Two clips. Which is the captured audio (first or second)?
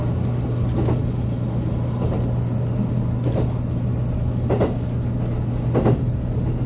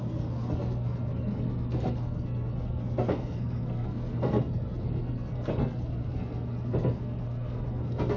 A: first